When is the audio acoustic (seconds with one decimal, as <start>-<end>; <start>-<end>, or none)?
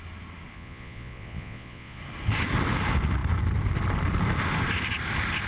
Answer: 0.0-0.5; 2.0-5.5